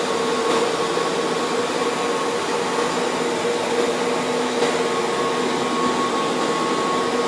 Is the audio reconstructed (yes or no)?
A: no